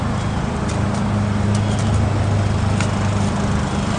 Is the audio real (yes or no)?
yes